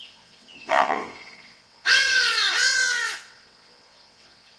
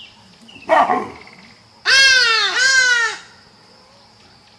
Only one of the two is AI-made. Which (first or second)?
first